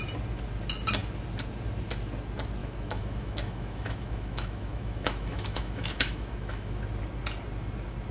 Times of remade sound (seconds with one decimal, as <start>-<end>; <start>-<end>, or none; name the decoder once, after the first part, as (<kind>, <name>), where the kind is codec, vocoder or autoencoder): 2.6-6.8 (autoencoder, DAC-VAE)